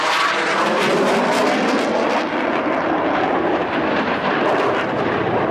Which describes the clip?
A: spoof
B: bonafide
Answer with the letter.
A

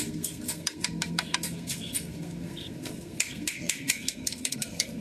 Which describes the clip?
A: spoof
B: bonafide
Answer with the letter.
A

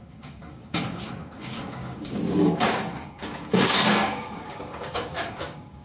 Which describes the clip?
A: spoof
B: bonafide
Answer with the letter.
A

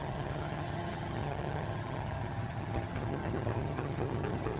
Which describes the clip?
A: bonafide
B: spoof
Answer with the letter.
B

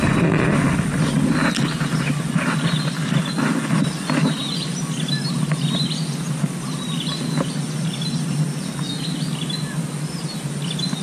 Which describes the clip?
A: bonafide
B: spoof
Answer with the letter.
A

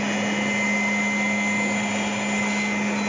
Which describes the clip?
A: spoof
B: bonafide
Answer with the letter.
B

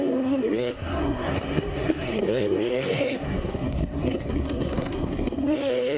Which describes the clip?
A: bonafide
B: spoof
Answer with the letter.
B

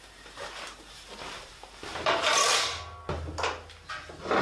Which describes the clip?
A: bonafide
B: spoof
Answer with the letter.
A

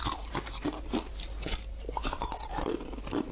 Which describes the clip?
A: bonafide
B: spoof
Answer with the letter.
A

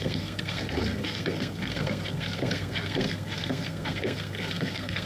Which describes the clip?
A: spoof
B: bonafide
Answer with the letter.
A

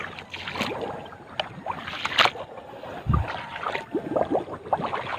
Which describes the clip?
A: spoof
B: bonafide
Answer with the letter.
B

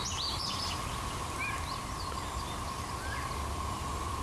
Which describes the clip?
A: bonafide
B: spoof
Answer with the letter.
A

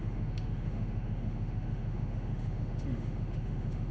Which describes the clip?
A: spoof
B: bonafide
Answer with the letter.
A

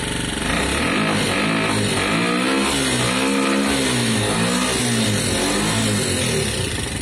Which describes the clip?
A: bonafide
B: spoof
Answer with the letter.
A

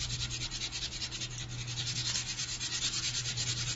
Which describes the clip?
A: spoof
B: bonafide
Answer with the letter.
A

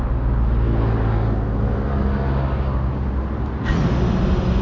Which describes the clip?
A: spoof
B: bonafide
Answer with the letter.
B